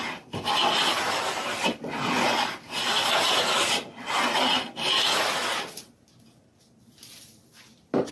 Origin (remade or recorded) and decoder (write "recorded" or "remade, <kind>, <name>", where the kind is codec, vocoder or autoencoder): recorded